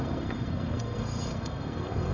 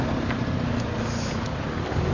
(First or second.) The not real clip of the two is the first